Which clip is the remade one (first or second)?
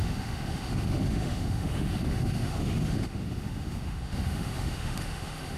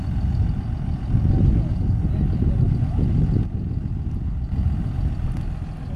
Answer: first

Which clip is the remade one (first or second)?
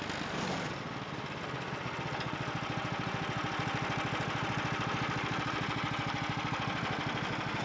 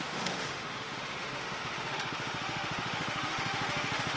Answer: second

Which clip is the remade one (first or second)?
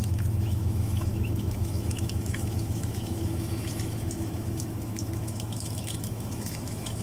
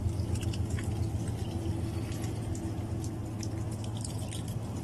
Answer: first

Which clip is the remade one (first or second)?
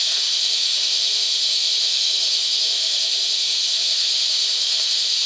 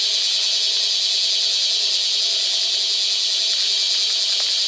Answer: first